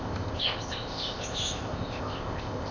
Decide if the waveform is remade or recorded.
remade